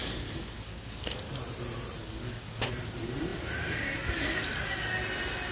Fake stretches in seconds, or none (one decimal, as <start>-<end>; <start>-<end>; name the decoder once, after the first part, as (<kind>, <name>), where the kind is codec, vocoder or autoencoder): 0.0-1.3 (codec, DAC); 2.0-2.6

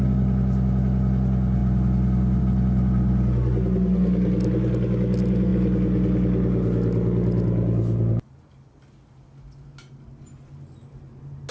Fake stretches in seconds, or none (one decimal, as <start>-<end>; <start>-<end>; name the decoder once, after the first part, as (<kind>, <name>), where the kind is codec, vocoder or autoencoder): none

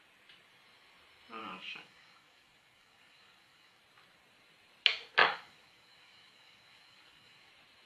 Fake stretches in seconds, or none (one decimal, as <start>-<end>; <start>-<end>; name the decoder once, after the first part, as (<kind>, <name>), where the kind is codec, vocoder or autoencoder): 1.4-3.8 (codec, DAC); 5.2-7.5

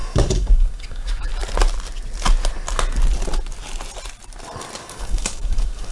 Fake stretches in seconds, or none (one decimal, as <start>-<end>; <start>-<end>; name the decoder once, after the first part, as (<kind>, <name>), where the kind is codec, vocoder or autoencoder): 0.0-1.3 (codec, DAC); 4.8-5.9

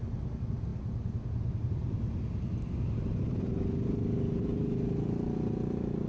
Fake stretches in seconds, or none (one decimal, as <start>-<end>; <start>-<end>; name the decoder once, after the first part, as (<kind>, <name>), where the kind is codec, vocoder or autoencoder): none

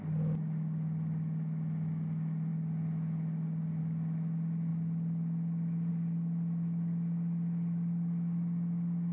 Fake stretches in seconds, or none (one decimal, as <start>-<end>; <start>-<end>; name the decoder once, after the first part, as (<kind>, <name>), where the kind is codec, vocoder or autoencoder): none